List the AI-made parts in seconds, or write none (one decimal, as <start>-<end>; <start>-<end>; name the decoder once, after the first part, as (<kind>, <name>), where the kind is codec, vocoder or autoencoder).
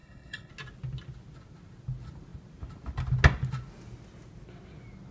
0.0-0.5 (codec, HILCodec)